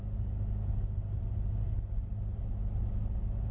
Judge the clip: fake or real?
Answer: real